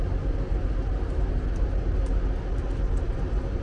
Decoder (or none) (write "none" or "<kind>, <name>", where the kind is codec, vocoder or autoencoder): none